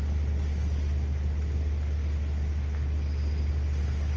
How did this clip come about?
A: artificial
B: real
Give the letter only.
B